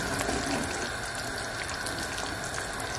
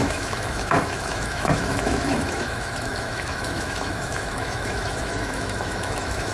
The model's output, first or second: second